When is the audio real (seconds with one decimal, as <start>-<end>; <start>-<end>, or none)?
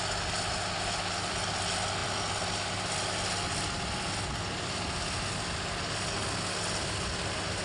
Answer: 0.0-7.6